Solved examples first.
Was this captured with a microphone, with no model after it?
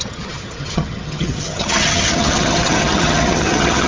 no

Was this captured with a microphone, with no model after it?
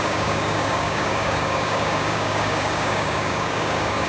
no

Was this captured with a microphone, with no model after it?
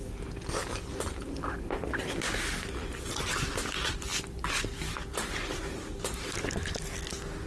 yes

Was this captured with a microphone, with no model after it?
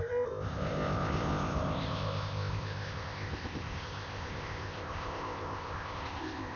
no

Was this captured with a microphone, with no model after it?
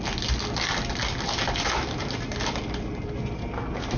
yes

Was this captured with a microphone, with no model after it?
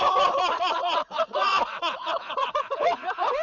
no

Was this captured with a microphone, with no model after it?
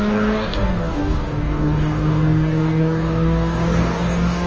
no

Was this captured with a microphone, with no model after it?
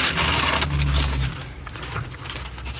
yes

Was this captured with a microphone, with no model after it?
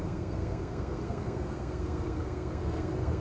no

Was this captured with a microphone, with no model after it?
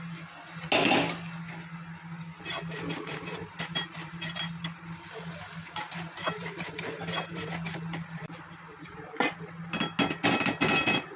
yes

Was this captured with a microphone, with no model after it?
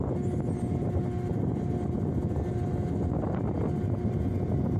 yes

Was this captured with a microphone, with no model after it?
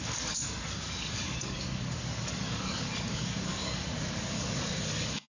no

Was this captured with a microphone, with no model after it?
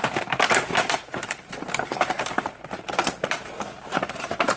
no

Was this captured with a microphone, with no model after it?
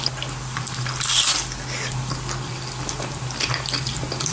yes